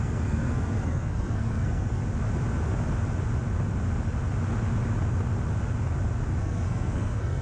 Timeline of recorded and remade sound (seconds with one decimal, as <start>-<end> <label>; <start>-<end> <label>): 0.0-2.0 remade; 2.0-6.4 recorded; 6.4-7.4 remade